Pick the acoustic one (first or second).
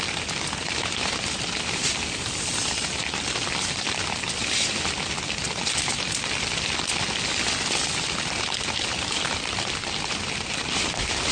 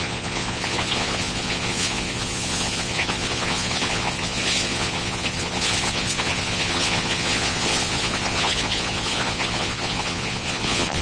first